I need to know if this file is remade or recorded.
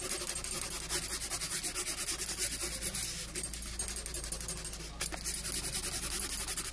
recorded